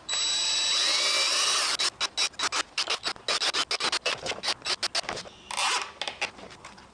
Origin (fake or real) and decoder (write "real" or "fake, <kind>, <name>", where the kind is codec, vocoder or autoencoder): real